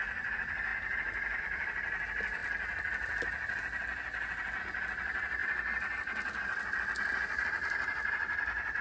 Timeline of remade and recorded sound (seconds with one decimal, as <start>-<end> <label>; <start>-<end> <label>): 0.0-0.7 remade; 0.7-1.4 recorded; 1.4-2.4 remade; 2.4-4.6 recorded; 4.6-5.4 remade; 5.4-6.4 recorded; 6.4-8.8 remade